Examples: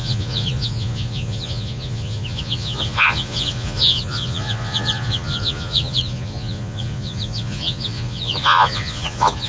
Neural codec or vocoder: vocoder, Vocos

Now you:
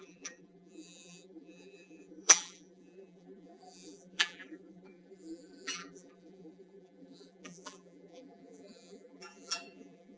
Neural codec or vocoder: vocoder, BigVGAN v2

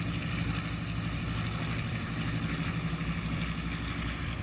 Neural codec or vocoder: none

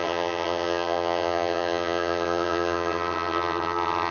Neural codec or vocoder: vocoder, HiFi-GAN